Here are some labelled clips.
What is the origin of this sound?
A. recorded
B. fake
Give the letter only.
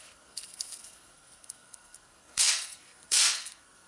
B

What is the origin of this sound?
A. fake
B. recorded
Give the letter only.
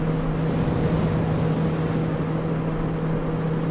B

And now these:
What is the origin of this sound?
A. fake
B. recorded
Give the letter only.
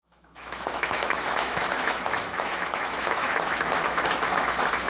A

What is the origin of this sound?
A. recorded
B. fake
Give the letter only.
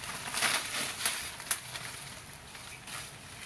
A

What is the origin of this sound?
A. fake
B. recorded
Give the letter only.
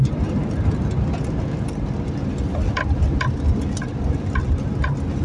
B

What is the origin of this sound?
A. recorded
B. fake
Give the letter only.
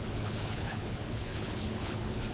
B